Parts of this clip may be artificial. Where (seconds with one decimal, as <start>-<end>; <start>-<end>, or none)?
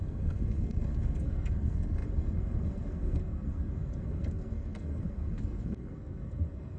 0.0-6.8